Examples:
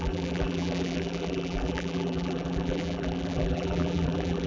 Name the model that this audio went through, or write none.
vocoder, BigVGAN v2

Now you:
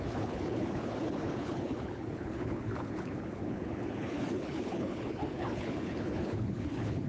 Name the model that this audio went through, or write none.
codec, HILCodec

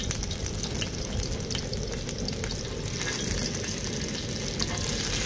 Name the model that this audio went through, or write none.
none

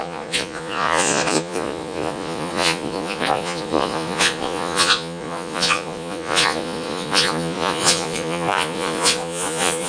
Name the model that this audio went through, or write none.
vocoder, Vocos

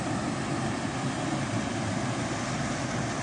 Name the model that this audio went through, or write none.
none